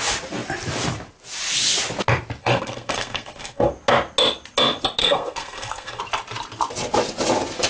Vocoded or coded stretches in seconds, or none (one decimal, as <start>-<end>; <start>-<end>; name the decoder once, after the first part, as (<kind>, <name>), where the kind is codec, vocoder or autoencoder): 2.4-3.7 (codec, SNAC); 5.0-6.0